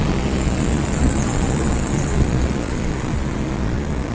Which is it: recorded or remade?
remade